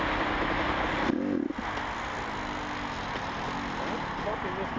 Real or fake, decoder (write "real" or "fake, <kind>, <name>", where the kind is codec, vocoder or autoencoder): real